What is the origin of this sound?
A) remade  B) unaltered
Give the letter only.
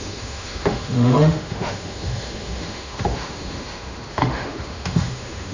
A